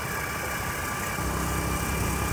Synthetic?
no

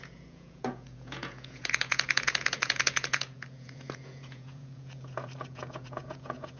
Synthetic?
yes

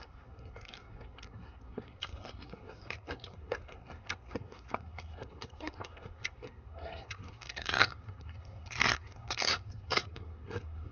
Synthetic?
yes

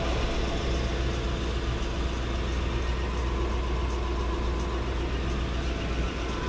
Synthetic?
no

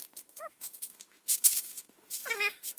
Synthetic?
yes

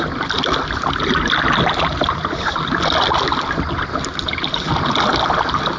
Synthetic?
no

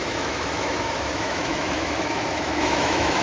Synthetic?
yes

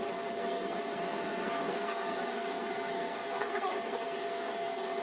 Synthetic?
yes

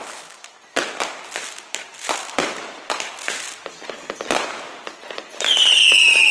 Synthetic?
no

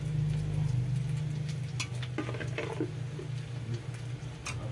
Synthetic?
no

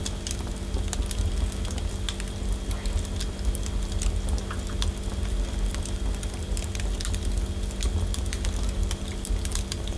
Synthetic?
no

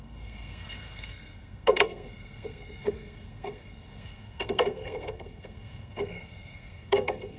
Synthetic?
yes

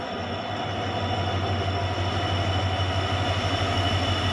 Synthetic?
no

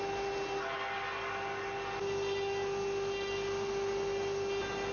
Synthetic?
no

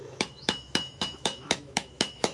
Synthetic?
yes